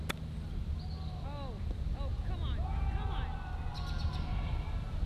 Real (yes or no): yes